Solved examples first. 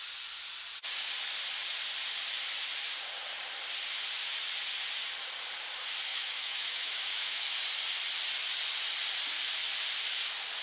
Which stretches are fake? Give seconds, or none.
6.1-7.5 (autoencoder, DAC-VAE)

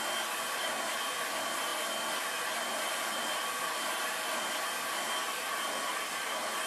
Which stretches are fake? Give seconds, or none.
1.7-5.7 (vocoder, BigVGAN v2)

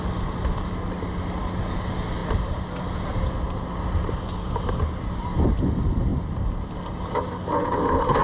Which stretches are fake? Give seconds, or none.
none